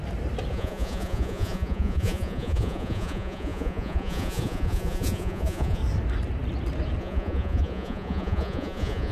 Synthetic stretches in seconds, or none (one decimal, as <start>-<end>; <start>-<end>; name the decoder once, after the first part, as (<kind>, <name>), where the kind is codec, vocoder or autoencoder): 0.5-5.8 (vocoder, Vocos); 7.0-9.1